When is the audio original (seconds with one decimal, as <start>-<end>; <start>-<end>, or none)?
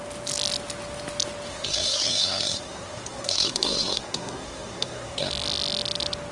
0.0-1.5; 5.3-6.3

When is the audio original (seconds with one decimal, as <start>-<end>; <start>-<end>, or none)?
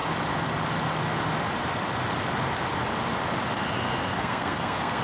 0.0-4.1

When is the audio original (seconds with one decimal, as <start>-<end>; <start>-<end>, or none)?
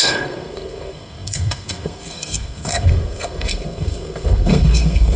none